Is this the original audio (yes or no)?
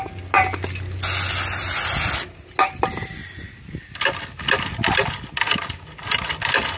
yes